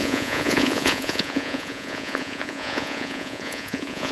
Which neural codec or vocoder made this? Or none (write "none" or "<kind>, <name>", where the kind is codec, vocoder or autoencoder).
vocoder, Vocos